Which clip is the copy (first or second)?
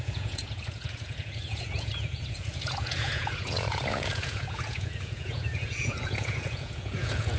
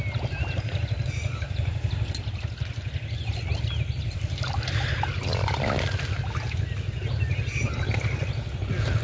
first